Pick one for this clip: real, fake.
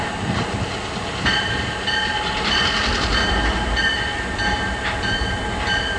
fake